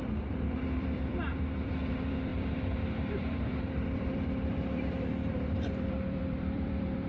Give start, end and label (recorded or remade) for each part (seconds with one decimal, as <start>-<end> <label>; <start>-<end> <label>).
0.0-7.1 remade